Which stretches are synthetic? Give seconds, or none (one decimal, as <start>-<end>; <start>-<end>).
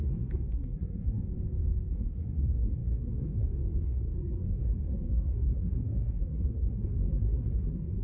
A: 0.0-1.2; 1.9-8.0